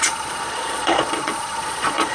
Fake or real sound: fake